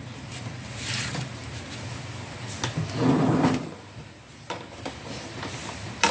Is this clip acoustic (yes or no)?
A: yes